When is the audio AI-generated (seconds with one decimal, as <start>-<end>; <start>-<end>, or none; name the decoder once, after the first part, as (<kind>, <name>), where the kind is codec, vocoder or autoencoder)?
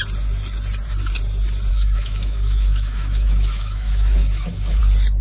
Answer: 1.7-4.8 (autoencoder, DAC-VAE)